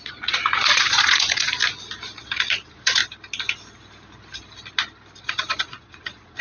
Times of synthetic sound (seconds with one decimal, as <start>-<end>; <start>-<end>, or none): 0.0-1.6; 2.2-3.0; 5.2-6.4